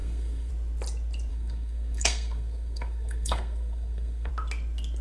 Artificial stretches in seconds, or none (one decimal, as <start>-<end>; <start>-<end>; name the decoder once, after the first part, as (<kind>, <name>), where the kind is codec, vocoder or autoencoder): 0.0-0.5 (codec, SNAC); 1.3-4.3